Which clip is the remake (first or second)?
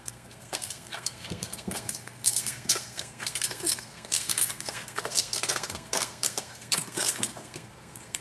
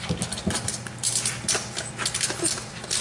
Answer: first